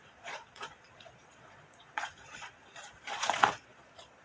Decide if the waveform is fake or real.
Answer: fake